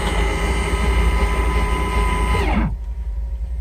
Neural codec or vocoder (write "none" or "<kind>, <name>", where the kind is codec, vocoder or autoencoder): vocoder, BigVGAN v2